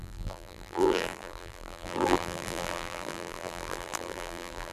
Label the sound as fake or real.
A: fake